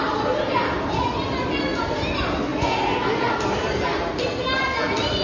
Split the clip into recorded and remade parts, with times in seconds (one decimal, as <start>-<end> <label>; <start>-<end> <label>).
0.0-5.2 recorded